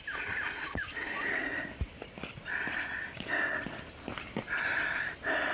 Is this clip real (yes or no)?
yes